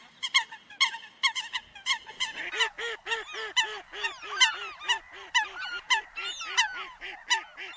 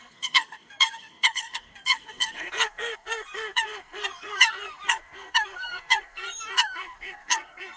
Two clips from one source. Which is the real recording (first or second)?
first